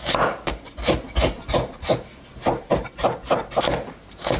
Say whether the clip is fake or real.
real